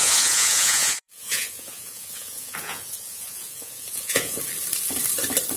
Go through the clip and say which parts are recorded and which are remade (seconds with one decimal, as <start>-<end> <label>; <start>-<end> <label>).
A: 0.0-4.4 remade; 4.4-5.6 recorded